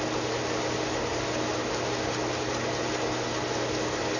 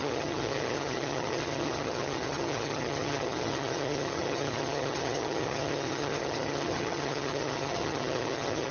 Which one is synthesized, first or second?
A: second